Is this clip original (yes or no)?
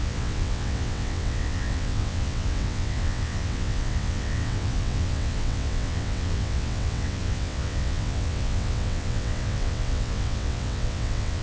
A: no